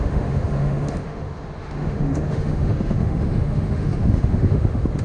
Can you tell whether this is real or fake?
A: fake